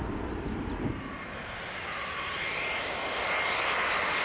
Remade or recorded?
recorded